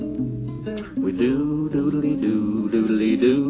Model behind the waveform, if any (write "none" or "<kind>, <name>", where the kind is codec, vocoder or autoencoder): vocoder, Vocos